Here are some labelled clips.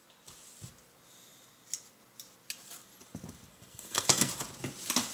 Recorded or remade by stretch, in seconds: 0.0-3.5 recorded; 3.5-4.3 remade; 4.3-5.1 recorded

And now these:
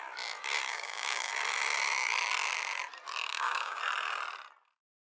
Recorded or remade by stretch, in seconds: 0.0-0.7 recorded; 0.7-1.3 remade; 1.3-3.3 recorded; 3.3-3.8 remade; 3.8-5.1 recorded

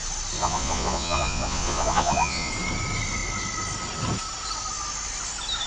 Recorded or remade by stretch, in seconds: 0.0-0.4 recorded; 0.4-2.5 remade; 2.5-5.7 recorded